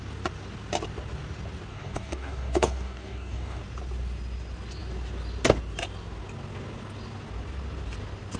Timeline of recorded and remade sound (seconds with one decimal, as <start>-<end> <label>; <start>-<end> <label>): 0.0-1.7 recorded; 1.7-3.6 remade; 3.6-8.4 recorded